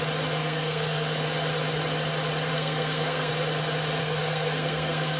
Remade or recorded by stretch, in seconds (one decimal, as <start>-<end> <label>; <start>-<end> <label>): 0.0-0.4 recorded; 0.4-1.2 remade; 1.2-2.5 recorded; 2.5-3.3 remade; 3.3-4.0 recorded; 4.0-5.2 remade